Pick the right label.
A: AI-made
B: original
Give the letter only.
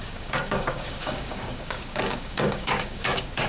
A